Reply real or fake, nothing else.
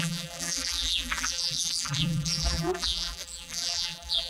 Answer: fake